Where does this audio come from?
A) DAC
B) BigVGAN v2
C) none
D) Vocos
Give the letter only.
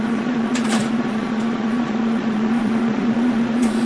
D